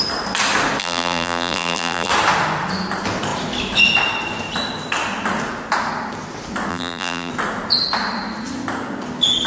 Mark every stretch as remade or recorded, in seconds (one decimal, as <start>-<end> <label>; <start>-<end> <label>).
0.0-0.8 recorded; 0.8-2.1 remade; 2.1-6.7 recorded; 6.7-7.3 remade; 7.3-9.5 recorded